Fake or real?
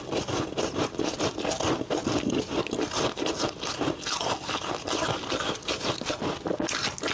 real